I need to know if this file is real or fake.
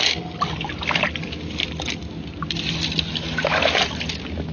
real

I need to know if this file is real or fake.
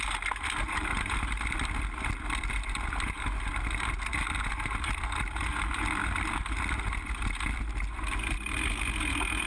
real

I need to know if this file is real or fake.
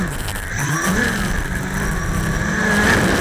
fake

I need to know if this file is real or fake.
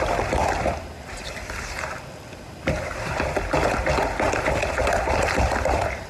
real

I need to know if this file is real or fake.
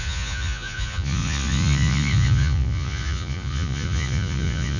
fake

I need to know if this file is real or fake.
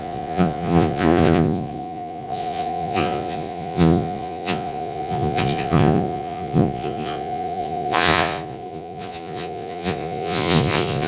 fake